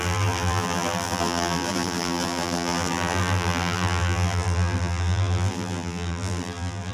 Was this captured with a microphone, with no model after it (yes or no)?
no